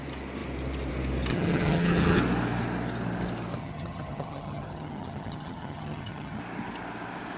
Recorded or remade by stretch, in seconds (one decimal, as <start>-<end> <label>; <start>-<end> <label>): 0.0-1.3 recorded; 1.3-2.2 remade; 2.2-3.6 recorded; 3.6-6.4 remade; 6.4-7.4 recorded